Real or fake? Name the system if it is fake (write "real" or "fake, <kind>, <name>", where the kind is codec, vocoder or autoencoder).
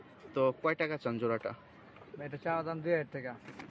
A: real